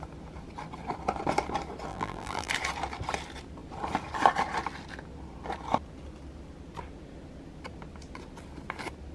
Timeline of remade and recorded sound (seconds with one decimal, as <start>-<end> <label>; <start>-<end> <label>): 0.0-1.9 recorded; 1.9-2.5 remade; 2.5-9.1 recorded